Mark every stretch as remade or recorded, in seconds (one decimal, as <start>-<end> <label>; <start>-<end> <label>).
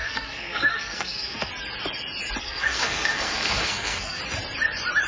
0.0-1.5 remade; 1.5-2.4 recorded; 2.4-4.2 remade; 4.2-5.1 recorded